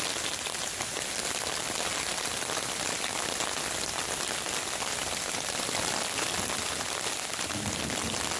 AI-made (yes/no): no